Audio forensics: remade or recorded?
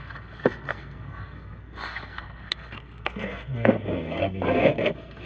remade